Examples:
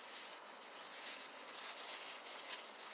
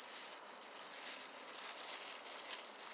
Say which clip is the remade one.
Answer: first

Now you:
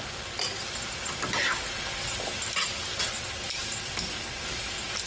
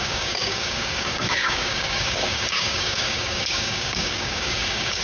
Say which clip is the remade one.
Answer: second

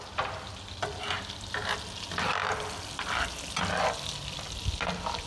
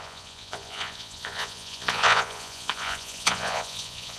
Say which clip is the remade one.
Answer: second